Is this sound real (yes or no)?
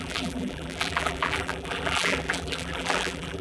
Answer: no